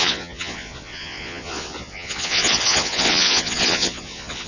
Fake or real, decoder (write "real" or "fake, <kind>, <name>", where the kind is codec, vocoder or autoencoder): fake, vocoder, Vocos